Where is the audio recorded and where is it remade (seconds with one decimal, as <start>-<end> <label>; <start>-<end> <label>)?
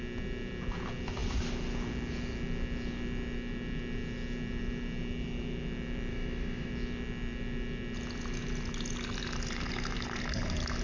0.0-6.1 recorded; 6.1-6.7 remade; 6.7-10.8 recorded